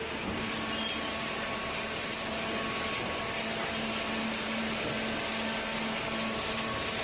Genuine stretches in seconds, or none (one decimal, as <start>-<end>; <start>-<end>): 0.0-7.0